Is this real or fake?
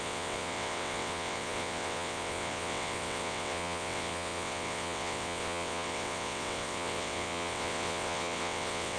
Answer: fake